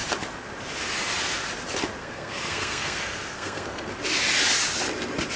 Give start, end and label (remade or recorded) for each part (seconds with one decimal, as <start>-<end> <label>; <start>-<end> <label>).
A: 0.0-2.0 recorded; 2.0-3.9 remade; 3.9-5.4 recorded